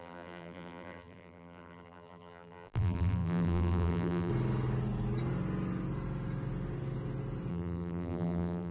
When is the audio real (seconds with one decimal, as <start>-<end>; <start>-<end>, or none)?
4.3-7.5